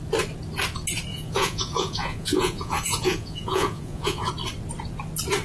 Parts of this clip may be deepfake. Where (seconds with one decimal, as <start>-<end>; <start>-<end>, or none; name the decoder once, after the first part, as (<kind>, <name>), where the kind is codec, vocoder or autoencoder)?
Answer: 1.1-4.3 (vocoder, Vocos)

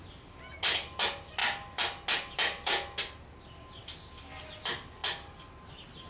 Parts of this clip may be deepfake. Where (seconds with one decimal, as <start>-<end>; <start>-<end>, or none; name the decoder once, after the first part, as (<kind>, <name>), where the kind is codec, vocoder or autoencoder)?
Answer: none

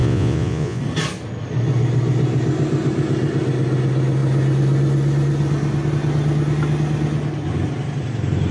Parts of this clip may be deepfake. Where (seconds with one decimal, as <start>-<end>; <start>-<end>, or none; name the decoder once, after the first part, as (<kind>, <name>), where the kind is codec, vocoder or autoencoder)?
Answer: 0.0-0.8 (vocoder, Vocos)

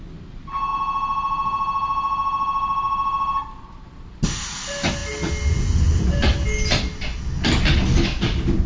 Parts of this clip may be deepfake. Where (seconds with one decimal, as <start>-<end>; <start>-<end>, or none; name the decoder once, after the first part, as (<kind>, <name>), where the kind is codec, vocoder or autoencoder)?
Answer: none

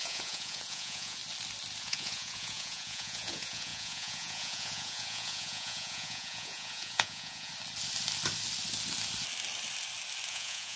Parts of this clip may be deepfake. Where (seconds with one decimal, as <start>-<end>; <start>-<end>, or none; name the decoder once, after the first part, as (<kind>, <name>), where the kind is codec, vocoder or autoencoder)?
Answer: 0.0-1.2 (vocoder, Vocos); 1.8-7.5; 10.3-10.8